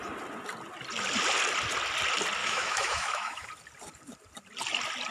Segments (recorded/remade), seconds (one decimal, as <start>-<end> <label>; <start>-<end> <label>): 0.0-2.4 recorded; 2.4-3.5 remade; 3.5-5.1 recorded